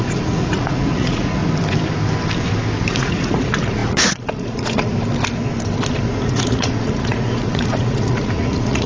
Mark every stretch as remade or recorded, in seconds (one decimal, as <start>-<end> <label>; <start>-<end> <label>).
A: 0.0-1.4 remade; 1.4-2.9 recorded; 2.9-4.9 remade; 4.9-6.1 recorded; 6.1-8.9 remade